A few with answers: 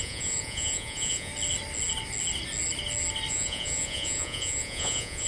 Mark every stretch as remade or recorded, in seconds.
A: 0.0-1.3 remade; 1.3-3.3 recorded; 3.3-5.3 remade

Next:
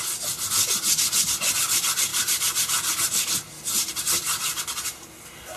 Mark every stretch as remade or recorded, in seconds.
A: 0.0-5.6 recorded

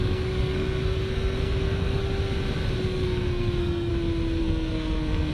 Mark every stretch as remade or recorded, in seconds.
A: 0.0-2.0 remade; 2.0-2.8 recorded; 2.8-3.9 remade; 3.9-4.4 recorded; 4.4-5.3 remade

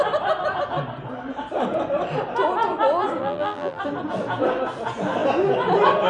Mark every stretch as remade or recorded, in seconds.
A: 0.0-3.2 recorded; 3.2-3.8 remade; 3.8-6.1 recorded

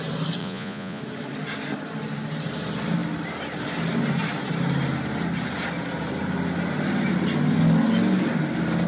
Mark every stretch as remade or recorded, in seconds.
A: 0.0-0.4 recorded; 0.4-1.0 remade; 1.0-8.9 recorded

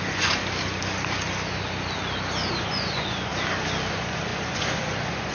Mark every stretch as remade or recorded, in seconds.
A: 0.0-0.4 remade; 0.4-2.6 recorded; 2.6-3.3 remade; 3.3-3.9 recorded; 3.9-5.3 remade